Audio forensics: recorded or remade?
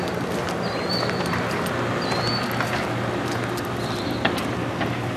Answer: recorded